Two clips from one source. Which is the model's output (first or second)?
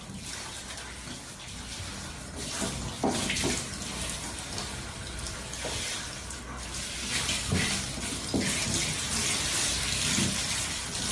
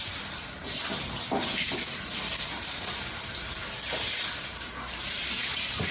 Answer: second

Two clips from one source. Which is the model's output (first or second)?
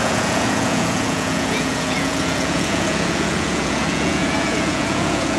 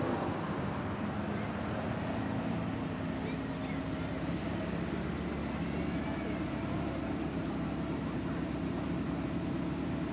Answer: first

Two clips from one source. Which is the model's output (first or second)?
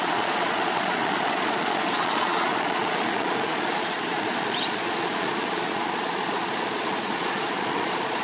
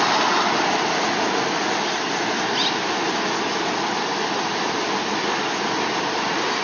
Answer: first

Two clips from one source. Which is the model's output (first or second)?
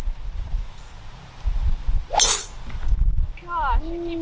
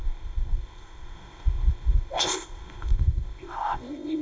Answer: second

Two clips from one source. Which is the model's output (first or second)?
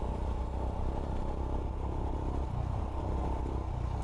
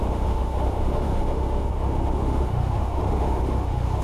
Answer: second